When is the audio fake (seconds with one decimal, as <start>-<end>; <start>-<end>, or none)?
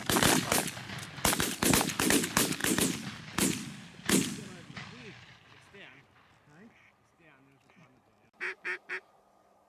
none